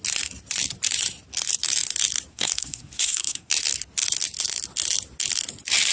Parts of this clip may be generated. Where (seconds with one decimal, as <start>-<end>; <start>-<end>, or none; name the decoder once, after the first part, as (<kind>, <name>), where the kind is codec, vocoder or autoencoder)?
2.3-3.5 (codec, SNAC)